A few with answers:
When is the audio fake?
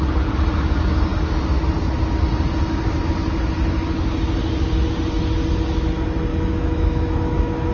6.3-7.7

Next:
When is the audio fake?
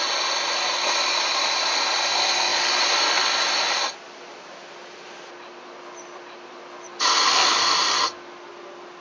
none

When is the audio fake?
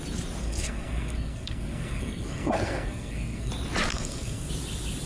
0.4-3.5; 3.9-4.5